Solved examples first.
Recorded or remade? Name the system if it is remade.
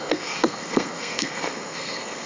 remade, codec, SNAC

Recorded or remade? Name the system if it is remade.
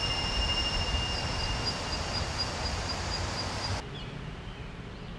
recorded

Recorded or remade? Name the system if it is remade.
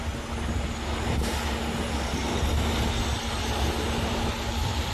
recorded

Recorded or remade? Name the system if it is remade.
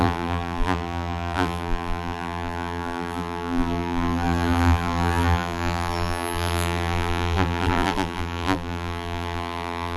remade, vocoder, BigVGAN v2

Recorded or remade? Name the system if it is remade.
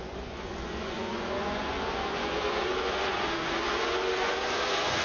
remade, vocoder, Vocos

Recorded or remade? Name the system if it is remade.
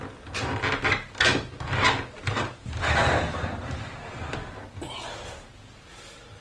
recorded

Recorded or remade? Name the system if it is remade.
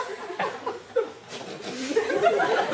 recorded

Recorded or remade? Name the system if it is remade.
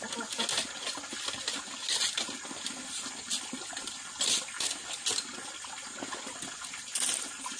recorded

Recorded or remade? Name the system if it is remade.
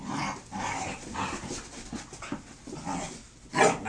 recorded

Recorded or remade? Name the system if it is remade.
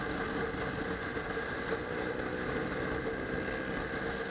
recorded